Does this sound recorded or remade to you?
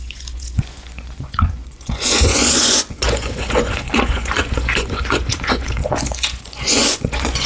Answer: remade